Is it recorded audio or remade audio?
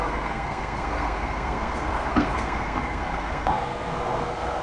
remade